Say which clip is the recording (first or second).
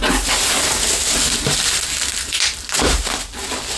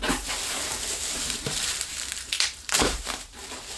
first